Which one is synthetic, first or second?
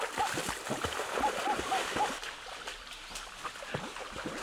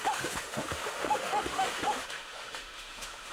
second